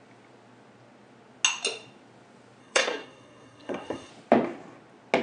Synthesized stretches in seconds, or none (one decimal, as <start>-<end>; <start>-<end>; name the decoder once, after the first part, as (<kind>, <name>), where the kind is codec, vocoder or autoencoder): 2.6-4.1 (codec, SNAC)